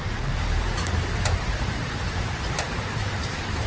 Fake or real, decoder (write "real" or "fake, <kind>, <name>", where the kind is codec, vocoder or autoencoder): fake, vocoder, BigVGAN v2